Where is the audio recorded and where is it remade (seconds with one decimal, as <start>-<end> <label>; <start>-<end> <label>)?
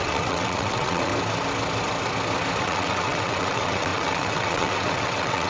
0.0-1.1 remade; 1.1-2.6 recorded; 2.6-5.5 remade